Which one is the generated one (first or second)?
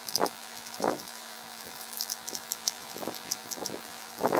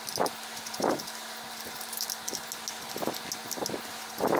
first